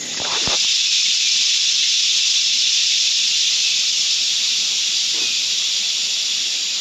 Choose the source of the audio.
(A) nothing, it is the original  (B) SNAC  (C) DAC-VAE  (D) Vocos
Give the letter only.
A